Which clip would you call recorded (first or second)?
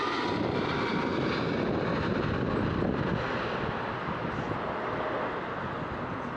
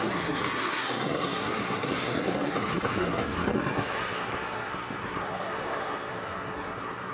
first